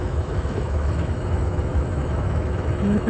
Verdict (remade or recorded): remade